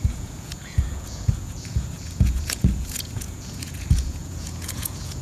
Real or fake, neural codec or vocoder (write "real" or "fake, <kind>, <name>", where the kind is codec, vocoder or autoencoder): fake, vocoder, Vocos